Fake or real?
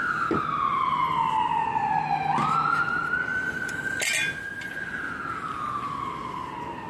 real